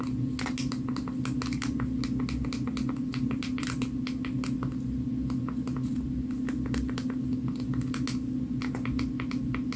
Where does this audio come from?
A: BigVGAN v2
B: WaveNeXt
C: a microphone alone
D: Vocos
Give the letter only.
C